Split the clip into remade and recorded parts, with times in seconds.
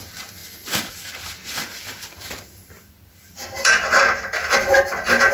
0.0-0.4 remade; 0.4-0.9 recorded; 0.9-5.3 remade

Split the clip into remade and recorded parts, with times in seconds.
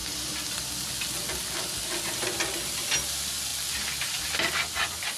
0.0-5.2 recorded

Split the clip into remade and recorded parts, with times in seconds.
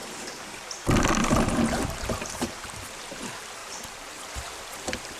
0.0-0.6 remade; 0.6-1.2 recorded; 1.2-2.9 remade; 2.9-3.6 recorded; 3.6-4.2 remade; 4.2-5.2 recorded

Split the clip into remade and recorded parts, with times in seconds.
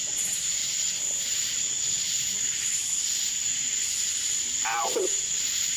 0.0-3.5 remade; 3.5-4.8 recorded; 4.8-5.8 remade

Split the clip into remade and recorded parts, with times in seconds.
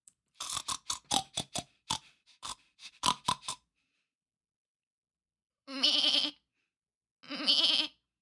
0.0-0.6 remade; 0.6-1.7 recorded; 1.7-6.3 remade; 6.3-8.2 recorded